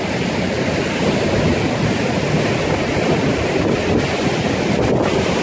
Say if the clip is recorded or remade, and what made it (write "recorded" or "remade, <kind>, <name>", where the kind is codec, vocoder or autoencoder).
recorded